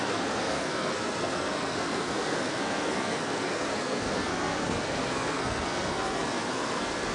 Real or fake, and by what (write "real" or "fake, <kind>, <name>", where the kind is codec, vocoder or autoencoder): fake, codec, SNAC